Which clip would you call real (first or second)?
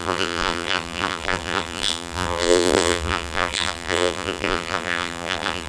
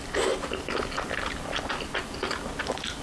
second